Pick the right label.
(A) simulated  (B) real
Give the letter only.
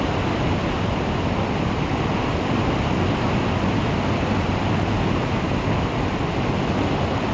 B